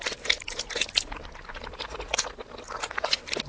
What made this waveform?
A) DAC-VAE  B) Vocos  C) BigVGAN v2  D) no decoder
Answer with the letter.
D